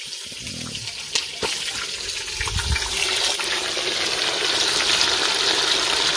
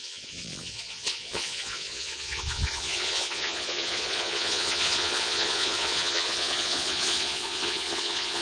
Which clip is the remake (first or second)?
second